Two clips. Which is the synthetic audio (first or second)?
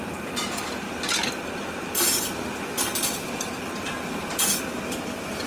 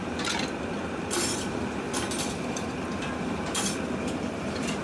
second